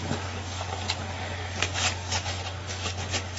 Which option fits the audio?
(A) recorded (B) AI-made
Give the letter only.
B